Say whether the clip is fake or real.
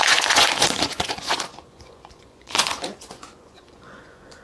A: fake